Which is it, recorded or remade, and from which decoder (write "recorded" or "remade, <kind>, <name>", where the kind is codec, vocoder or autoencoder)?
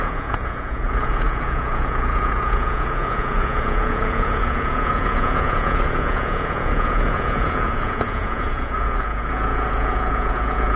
remade, vocoder, Vocos